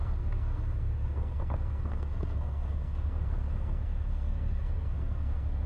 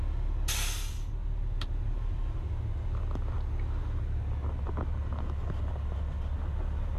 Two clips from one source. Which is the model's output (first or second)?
first